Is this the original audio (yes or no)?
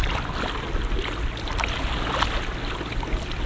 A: yes